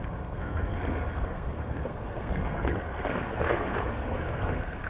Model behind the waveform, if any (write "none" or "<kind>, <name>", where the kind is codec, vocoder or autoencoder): codec, SNAC